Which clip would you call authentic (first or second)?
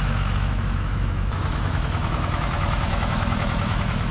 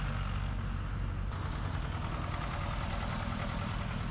second